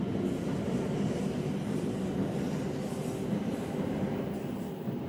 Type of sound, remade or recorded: recorded